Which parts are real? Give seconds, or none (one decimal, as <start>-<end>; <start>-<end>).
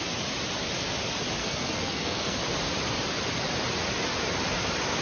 0.0-1.4; 2.4-5.0